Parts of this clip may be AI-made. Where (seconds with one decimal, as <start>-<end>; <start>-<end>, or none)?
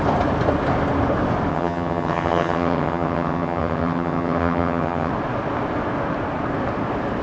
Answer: 1.5-5.1